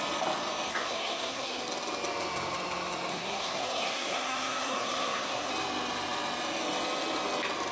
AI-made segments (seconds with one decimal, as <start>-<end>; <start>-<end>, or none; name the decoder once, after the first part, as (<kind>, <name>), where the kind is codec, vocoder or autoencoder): 0.7-1.6 (codec, SNAC); 3.1-5.5